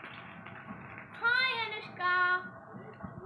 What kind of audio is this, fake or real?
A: real